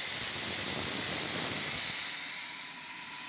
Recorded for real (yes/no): yes